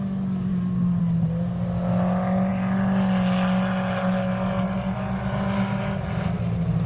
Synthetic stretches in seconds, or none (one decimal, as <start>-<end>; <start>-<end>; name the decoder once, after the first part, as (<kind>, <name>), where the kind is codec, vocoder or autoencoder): none

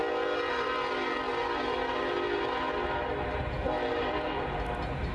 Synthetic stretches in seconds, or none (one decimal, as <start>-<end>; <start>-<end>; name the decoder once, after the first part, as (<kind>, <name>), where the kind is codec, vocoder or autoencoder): 0.5-5.1 (vocoder, BigVGAN v2)

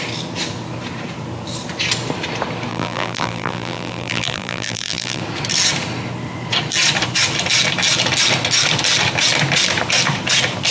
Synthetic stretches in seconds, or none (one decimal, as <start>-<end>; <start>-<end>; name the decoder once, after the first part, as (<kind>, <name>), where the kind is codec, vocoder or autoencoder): 2.7-5.2 (vocoder, BigVGAN v2)

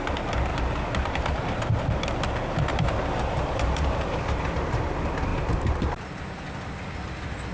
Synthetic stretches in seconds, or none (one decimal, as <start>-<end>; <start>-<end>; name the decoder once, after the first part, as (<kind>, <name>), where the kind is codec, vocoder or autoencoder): 0.5-1.8 (vocoder, BigVGAN v2); 2.7-4.8; 5.3-6.2

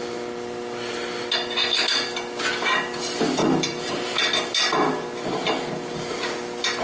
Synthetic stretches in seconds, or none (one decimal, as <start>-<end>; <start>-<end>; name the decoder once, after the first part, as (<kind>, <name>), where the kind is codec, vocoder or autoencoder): 3.4-4.2 (vocoder, BigVGAN v2)

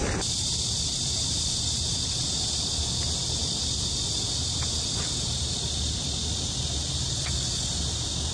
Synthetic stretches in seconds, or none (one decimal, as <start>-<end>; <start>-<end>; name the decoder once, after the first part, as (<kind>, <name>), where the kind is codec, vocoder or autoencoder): none